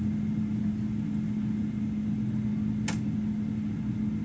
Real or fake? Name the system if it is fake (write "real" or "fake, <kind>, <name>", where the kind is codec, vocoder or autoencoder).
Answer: real